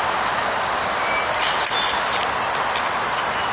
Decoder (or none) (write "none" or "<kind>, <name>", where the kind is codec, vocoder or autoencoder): none